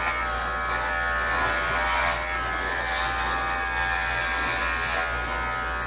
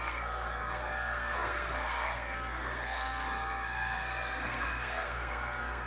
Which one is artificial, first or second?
second